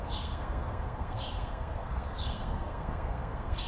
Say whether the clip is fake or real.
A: fake